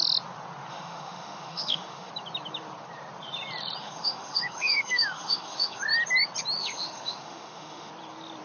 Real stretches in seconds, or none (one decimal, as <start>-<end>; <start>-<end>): 0.0-0.7; 2.1-3.8; 5.8-6.6; 7.9-8.4